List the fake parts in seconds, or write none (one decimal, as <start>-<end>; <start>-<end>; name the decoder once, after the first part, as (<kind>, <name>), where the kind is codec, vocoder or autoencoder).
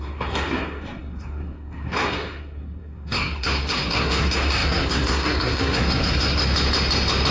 0.0-6.4 (codec, SNAC)